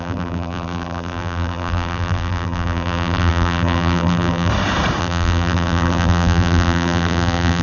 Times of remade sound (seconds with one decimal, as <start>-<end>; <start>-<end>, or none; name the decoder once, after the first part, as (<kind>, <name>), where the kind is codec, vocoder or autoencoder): 0.0-4.5 (vocoder, BigVGAN v2); 5.0-7.6